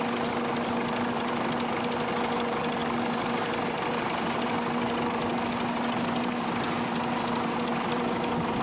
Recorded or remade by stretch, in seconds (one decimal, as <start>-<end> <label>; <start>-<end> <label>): 0.0-8.6 recorded